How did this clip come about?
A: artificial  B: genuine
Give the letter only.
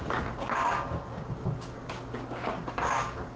A